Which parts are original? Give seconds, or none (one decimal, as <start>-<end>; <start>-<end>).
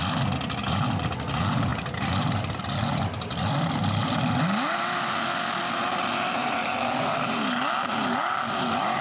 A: 0.0-1.7; 4.3-6.4; 7.3-9.0